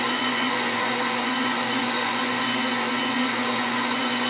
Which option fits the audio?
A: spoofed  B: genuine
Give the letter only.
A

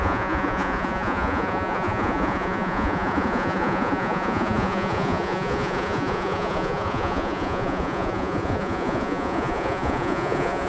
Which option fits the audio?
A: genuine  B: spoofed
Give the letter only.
B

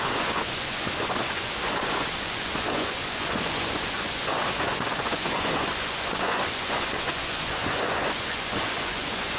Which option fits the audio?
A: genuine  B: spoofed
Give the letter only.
B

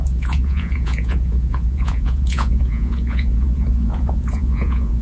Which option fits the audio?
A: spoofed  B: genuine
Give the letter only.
A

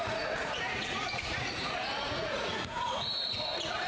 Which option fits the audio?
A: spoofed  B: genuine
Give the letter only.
A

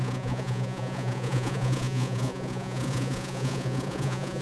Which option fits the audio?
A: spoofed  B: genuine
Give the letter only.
A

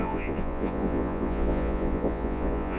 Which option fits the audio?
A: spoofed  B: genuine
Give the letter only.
A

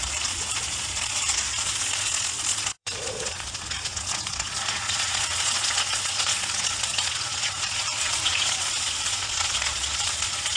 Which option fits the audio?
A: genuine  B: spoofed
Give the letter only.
B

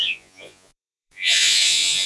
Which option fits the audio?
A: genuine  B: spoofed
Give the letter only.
B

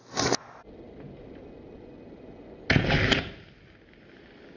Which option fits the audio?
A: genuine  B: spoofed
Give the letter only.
A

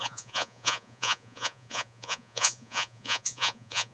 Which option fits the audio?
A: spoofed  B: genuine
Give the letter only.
A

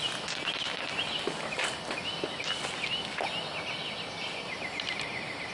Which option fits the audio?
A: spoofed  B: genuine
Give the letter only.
B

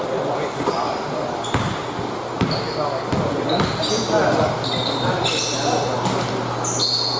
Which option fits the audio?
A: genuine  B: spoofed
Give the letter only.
A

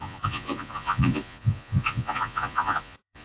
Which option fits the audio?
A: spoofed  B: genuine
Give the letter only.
A